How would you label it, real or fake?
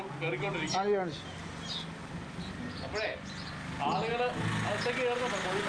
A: real